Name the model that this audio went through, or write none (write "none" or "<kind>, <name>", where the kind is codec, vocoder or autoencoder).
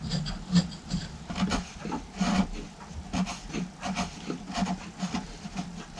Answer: none